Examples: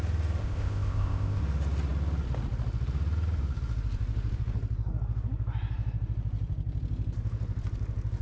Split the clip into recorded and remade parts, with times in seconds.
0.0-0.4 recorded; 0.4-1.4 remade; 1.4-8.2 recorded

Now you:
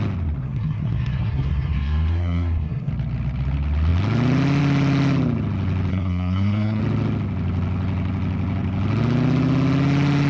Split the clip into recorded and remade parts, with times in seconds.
0.0-0.4 recorded; 0.4-2.9 remade; 2.9-5.9 recorded; 5.9-6.8 remade; 6.8-10.3 recorded

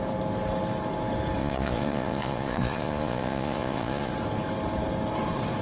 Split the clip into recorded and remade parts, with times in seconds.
0.0-1.4 recorded; 1.4-4.1 remade; 4.1-5.6 recorded

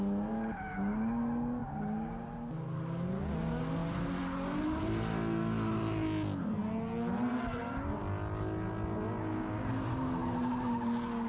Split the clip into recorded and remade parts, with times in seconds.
0.0-11.3 recorded

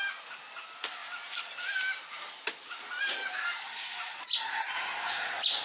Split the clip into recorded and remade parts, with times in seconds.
0.0-5.6 recorded

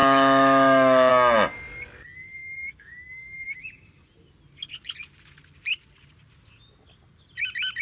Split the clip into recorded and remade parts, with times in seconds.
0.0-1.1 remade; 1.1-2.4 recorded; 2.4-3.6 remade; 3.6-7.8 recorded

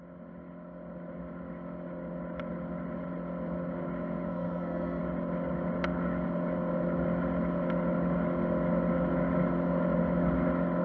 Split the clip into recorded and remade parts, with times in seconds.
0.0-4.3 recorded; 4.3-5.0 remade; 5.0-10.8 recorded